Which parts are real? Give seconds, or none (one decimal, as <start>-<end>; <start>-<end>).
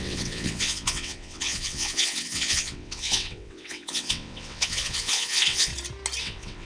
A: 5.7-6.2